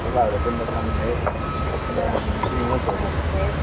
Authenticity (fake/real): real